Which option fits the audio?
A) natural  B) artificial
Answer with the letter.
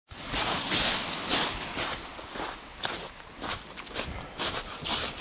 A